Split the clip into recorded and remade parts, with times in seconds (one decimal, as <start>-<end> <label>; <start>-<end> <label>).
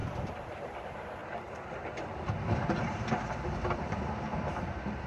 0.0-0.6 recorded; 0.6-1.2 remade; 1.2-2.5 recorded; 2.5-5.1 remade